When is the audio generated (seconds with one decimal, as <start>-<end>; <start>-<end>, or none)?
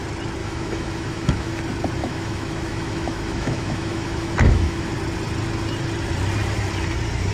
0.4-1.6; 2.0-4.9